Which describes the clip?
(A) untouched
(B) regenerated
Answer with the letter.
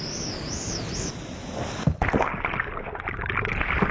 A